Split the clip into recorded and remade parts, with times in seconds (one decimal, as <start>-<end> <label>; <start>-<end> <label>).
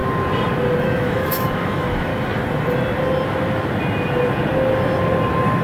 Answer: 0.0-0.8 recorded; 0.8-2.1 remade; 2.1-5.6 recorded